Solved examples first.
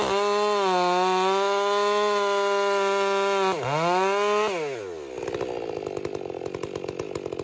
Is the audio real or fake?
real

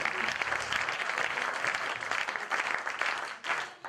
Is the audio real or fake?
real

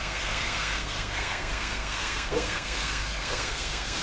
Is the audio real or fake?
fake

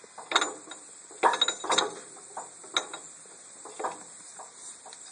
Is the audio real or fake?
real